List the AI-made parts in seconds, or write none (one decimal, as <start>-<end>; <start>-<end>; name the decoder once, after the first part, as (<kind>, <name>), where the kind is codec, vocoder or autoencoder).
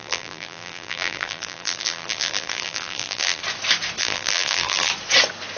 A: 0.0-3.4 (vocoder, BigVGAN v2); 4.0-4.9